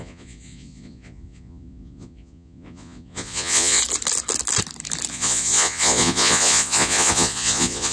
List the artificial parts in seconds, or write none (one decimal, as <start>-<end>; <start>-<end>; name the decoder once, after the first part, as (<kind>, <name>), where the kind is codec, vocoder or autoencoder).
0.0-3.8 (vocoder, Vocos); 5.1-7.9